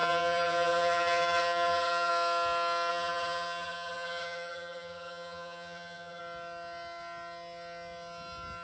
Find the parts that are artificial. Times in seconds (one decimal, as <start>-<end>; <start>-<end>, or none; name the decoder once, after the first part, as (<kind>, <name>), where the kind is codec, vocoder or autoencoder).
0.0-2.1 (vocoder, HiFi-GAN); 2.9-6.2